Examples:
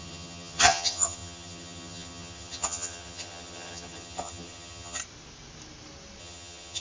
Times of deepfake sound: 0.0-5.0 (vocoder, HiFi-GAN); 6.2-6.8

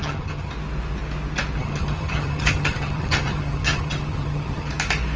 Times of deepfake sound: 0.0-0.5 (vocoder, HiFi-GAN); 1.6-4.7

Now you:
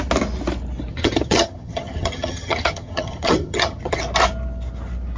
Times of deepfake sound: 0.9-4.0 (vocoder, HiFi-GAN)

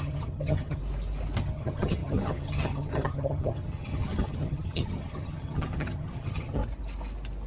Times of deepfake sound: 0.0-0.8 (vocoder, HiFi-GAN); 1.4-6.6